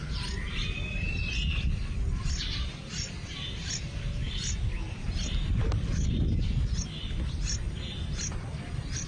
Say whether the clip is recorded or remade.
recorded